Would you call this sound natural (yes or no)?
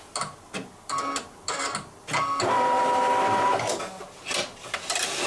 yes